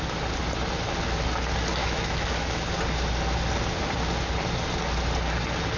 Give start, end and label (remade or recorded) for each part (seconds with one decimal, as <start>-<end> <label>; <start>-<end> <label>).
0.0-1.8 recorded; 1.8-2.7 remade; 2.7-5.8 recorded